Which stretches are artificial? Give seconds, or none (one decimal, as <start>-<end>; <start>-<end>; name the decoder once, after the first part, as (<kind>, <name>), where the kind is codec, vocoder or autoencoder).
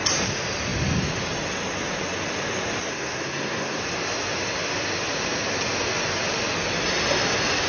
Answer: 2.9-3.8 (codec, SNAC)